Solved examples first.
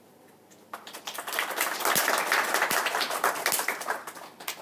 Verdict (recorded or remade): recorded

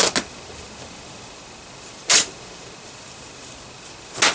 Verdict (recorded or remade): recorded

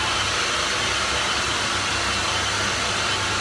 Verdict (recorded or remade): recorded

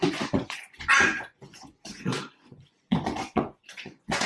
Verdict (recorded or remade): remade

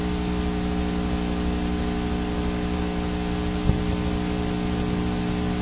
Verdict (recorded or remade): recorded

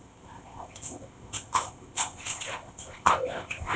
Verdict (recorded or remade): remade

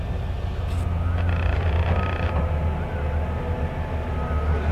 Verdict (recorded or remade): recorded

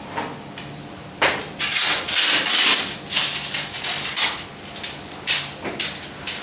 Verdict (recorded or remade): recorded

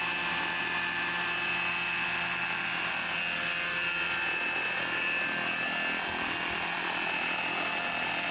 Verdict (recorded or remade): recorded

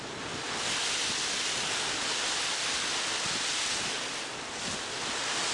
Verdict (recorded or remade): recorded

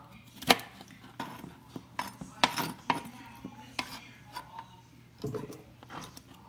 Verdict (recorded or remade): recorded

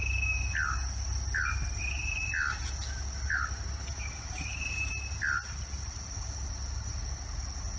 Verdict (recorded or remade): recorded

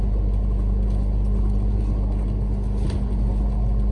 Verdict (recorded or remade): recorded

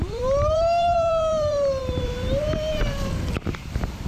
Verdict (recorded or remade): remade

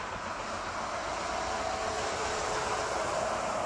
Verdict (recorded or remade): recorded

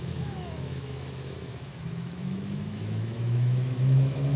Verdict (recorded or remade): remade